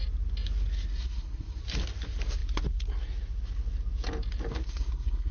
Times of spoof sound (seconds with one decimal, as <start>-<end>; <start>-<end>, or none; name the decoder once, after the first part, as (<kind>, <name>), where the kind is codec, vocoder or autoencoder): 0.9-1.6 (codec, SNAC); 4.5-5.3